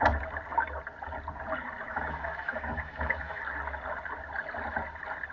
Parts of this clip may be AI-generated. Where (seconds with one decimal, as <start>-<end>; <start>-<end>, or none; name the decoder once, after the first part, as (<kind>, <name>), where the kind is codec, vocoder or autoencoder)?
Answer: 1.9-3.4 (autoencoder, DAC-VAE)

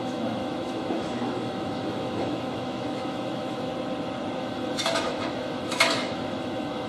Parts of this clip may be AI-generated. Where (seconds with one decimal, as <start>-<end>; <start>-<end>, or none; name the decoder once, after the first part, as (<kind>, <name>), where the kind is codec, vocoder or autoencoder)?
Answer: 0.0-3.7 (autoencoder, DAC-VAE); 4.4-6.9

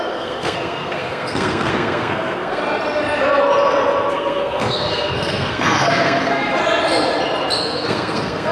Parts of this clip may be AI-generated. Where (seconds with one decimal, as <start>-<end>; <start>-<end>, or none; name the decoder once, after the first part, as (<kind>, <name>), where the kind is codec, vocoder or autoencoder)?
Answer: 0.0-2.6 (codec, SNAC); 4.1-6.6; 7.6-8.5

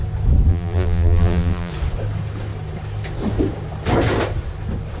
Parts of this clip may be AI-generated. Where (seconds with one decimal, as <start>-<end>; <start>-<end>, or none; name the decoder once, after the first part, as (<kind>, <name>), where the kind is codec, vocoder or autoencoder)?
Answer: 0.5-1.7 (vocoder, BigVGAN v2)

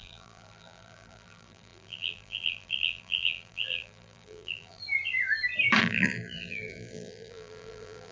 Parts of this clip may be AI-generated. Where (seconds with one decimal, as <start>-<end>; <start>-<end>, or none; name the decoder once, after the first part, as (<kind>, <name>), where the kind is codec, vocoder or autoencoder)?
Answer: 0.0-4.8 (vocoder, BigVGAN v2); 5.8-8.1

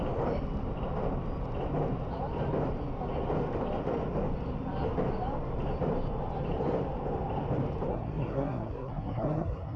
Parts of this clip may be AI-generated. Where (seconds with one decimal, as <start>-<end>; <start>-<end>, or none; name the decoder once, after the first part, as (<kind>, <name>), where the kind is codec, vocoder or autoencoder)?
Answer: 7.9-9.8 (codec, SNAC)